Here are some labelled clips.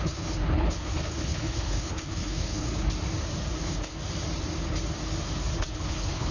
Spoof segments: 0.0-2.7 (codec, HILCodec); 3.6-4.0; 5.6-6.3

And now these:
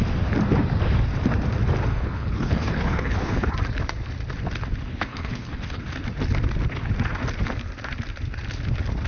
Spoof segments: 1.9-3.5 (codec, HILCodec); 4.9-5.8

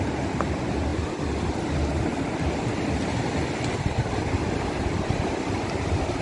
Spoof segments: none

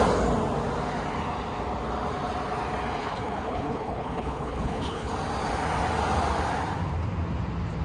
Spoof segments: 3.0-5.1 (codec, HILCodec)